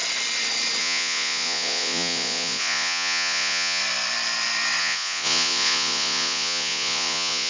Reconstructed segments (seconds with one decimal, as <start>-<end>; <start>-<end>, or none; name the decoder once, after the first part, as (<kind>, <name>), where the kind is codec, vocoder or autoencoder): 0.8-3.8 (vocoder, Vocos); 4.8-7.5